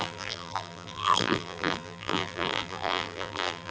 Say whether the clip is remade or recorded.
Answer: remade